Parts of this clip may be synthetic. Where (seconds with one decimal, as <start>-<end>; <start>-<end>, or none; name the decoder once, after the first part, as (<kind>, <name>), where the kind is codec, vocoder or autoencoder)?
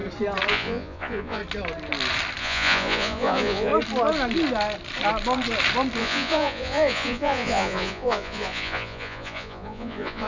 0.5-1.4 (vocoder, Vocos); 2.4-3.7; 6.0-10.3